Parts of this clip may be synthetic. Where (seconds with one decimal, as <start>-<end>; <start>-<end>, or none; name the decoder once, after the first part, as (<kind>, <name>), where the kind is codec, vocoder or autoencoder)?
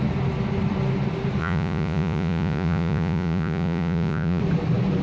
1.4-4.4 (vocoder, Vocos)